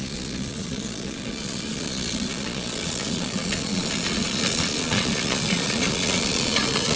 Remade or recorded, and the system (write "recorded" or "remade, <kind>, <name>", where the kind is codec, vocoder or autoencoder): remade, vocoder, Vocos